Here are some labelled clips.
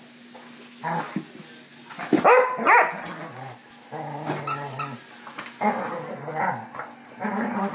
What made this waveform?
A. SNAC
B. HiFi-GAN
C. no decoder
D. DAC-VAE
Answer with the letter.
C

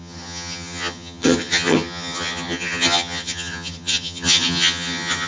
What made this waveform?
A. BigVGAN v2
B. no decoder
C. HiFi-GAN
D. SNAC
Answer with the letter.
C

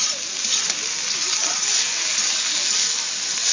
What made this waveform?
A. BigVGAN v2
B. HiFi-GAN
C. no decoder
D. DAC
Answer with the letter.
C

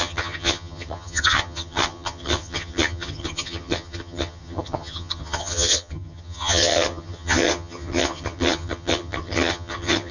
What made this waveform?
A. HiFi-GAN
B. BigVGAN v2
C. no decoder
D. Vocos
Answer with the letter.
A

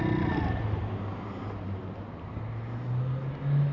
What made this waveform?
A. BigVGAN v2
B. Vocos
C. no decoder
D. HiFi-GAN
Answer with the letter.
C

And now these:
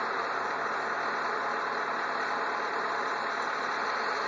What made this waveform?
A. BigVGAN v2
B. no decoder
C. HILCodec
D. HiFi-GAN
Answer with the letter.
B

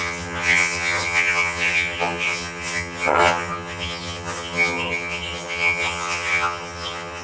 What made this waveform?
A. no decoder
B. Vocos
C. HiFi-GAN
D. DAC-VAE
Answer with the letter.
C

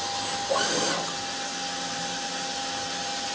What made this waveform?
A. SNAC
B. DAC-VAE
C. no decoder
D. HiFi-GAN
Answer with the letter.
C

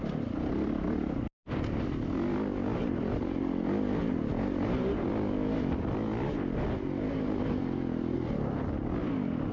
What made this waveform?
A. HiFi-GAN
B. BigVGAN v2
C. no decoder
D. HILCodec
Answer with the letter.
C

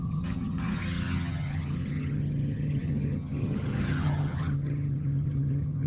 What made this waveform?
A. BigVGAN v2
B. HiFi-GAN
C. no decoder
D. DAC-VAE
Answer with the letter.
B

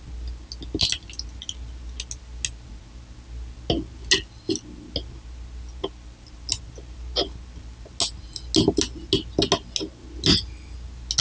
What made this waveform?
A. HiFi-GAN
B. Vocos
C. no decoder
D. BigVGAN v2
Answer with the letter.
C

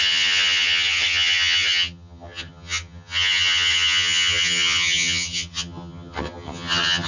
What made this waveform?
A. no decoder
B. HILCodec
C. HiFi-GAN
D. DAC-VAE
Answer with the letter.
C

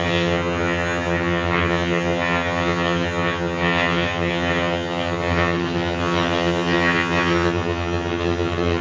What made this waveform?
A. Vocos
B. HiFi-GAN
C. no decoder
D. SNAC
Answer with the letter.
B